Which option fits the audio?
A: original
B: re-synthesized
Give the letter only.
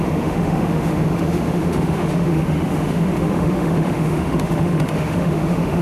B